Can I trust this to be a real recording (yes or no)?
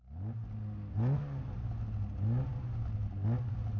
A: yes